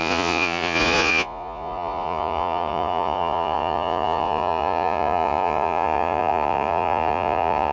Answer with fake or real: fake